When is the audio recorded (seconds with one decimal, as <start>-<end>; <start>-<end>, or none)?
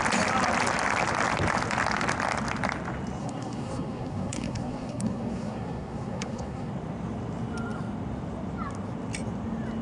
0.0-3.2; 6.7-9.8